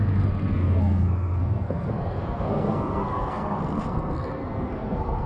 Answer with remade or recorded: remade